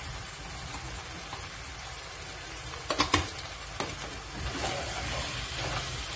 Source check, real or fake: real